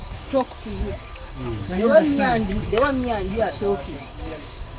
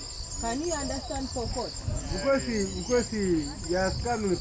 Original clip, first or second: second